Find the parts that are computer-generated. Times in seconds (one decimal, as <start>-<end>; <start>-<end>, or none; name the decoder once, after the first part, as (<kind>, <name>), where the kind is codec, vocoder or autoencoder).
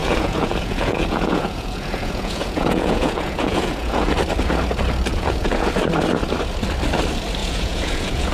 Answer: 0.0-4.1 (vocoder, Vocos); 5.1-5.7; 7.4-8.3